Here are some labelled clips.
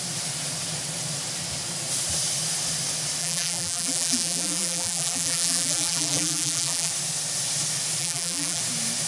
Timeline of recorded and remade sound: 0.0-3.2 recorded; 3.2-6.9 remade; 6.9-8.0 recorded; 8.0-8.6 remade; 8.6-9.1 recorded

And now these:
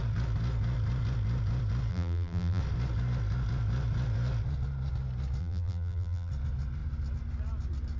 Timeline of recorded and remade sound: 0.0-1.9 recorded; 1.9-2.6 remade; 2.6-5.4 recorded; 5.4-6.3 remade; 6.3-8.0 recorded